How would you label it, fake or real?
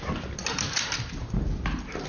real